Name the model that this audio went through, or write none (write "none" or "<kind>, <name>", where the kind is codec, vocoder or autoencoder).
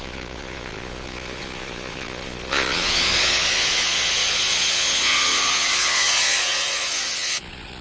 vocoder, Vocos